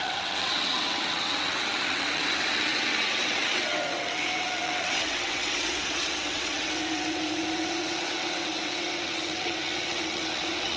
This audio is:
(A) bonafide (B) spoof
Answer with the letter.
B